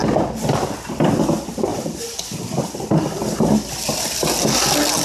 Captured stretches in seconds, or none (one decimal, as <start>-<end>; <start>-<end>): 0.0-5.0